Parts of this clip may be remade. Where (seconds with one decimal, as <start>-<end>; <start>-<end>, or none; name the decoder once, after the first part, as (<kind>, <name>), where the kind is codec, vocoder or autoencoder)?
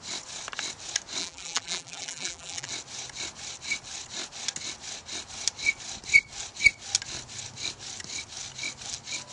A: 1.2-2.7 (vocoder, BigVGAN v2)